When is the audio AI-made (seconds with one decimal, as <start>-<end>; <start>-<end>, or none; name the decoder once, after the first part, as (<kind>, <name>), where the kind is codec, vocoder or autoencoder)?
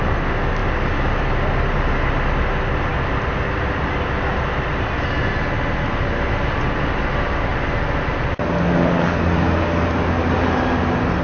none